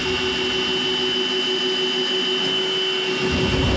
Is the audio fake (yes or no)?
no